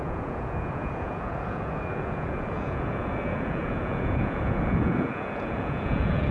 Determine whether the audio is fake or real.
fake